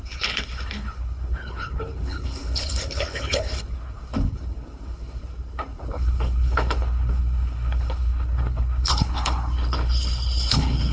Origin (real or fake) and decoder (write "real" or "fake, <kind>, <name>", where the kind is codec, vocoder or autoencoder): fake, codec, HILCodec